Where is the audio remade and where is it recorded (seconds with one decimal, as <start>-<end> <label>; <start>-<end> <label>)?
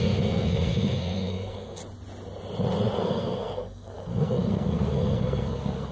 0.0-1.8 remade; 1.8-3.0 recorded; 3.0-5.9 remade